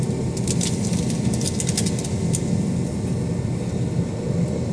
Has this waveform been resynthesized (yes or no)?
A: no